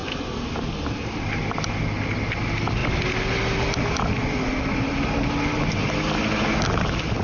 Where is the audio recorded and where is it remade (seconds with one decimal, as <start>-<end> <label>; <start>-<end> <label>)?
0.0-7.2 recorded